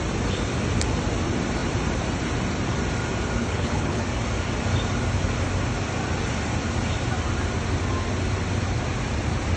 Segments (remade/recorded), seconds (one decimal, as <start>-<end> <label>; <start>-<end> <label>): 0.0-3.4 recorded; 3.4-4.0 remade; 4.0-9.6 recorded